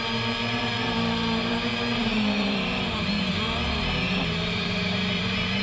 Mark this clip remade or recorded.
remade